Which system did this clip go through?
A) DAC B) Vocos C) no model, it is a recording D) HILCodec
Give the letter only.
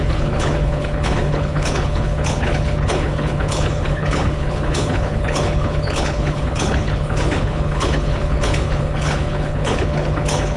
D